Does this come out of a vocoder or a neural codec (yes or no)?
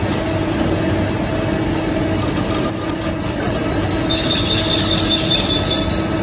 no